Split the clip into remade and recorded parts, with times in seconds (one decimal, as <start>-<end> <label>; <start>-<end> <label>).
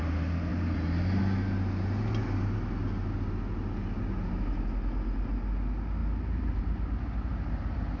0.0-8.0 recorded